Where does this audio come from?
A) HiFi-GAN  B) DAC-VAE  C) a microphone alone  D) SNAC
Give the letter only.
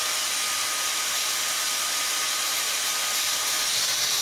C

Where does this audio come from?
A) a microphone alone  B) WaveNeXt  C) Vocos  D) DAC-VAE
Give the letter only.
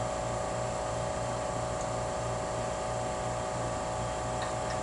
A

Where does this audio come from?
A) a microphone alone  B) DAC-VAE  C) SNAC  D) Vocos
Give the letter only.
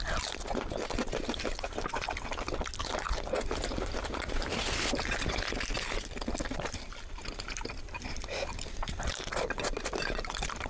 A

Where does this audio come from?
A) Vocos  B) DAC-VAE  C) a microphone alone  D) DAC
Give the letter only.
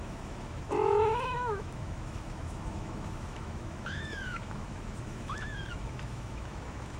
B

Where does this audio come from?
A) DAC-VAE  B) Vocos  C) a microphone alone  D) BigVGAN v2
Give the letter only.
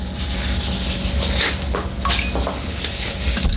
C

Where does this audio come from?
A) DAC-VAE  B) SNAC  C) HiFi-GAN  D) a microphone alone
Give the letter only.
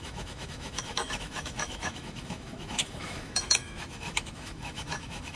A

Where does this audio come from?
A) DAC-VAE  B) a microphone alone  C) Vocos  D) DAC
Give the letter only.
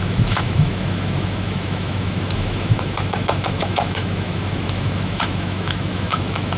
A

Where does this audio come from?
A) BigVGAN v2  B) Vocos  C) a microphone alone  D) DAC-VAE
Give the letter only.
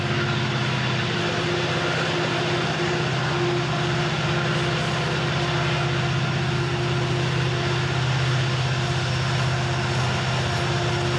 C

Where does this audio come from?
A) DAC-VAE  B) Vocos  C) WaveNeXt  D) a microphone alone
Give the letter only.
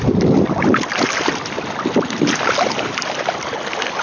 D